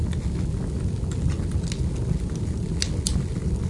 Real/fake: real